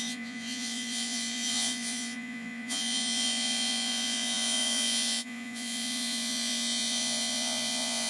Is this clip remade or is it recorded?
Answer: remade